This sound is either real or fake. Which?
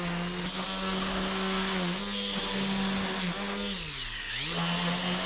real